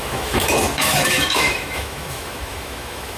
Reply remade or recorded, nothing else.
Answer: remade